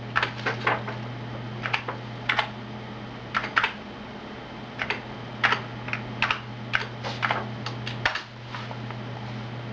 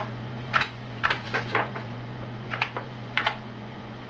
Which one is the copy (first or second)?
second